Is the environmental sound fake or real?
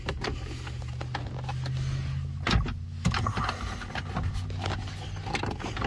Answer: real